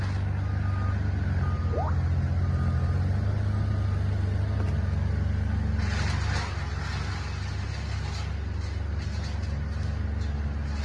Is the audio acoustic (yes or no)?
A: yes